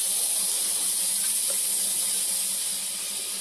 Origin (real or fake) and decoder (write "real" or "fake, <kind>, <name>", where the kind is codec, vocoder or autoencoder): real